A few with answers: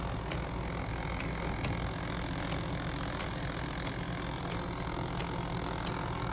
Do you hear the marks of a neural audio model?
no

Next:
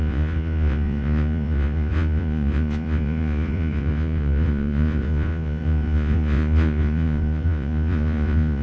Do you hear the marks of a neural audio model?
yes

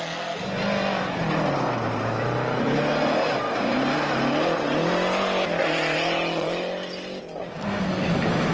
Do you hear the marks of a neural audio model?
no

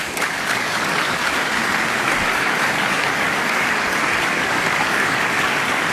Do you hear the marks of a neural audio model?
yes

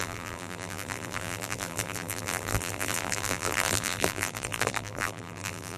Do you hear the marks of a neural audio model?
yes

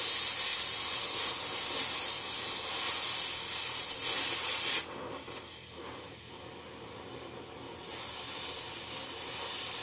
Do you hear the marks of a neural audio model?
no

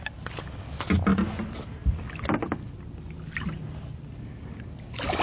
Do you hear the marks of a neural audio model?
no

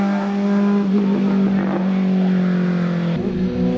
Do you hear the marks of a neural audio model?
no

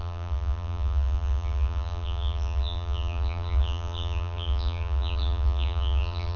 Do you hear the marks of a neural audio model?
yes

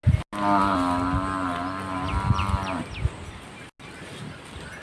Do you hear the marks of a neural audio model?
no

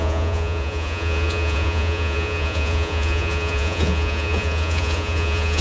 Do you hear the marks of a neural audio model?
yes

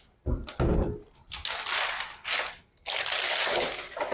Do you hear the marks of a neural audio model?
no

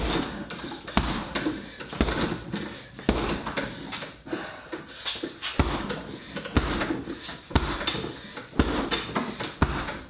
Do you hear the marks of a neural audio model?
no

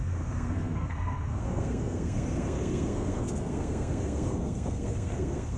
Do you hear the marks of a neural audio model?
yes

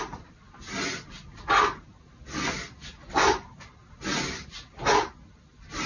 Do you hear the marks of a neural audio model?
no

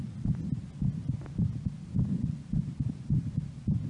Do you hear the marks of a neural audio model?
no